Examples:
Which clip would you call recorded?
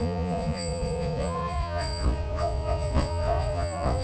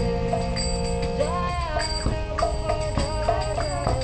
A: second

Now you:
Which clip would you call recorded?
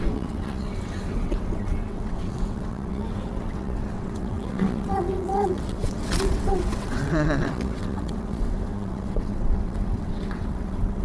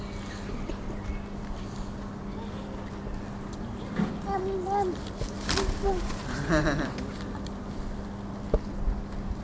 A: second